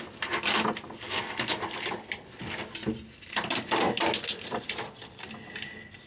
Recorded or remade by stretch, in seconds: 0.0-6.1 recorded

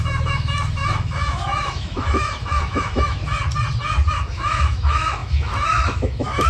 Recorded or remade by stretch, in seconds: 0.0-3.2 remade; 3.2-4.1 recorded; 4.1-6.5 remade

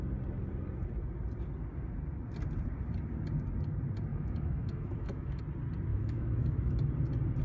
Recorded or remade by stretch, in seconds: 0.0-4.1 recorded; 4.1-5.4 remade; 5.4-5.9 recorded; 5.9-6.9 remade; 6.9-7.4 recorded